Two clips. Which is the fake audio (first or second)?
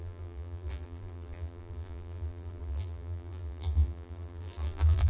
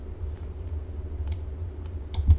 first